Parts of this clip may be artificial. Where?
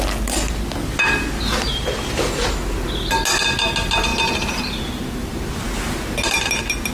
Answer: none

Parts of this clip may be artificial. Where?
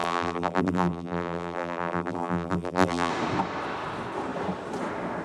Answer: 0.0-3.1 (vocoder, BigVGAN v2)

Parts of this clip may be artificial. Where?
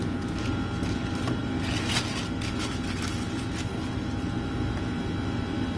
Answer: none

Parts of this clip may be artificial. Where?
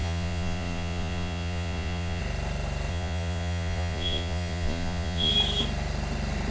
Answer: 0.0-2.2 (vocoder, Vocos); 2.9-5.3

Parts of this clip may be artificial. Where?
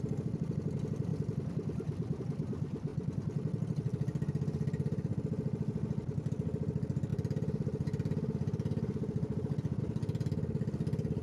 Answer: 7.1-9.8 (vocoder, BigVGAN v2)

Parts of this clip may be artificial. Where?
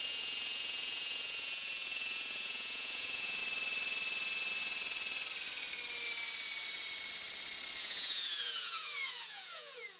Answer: 0.0-3.4 (vocoder, Vocos); 7.8-10.0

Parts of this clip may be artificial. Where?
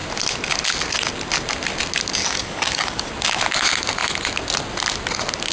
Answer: 2.2-3.1 (codec, DAC)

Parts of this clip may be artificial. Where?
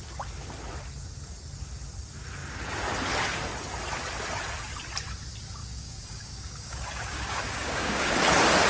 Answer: 5.6-8.1 (codec, DAC)